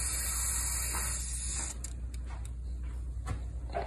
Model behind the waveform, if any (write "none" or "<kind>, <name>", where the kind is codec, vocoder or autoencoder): none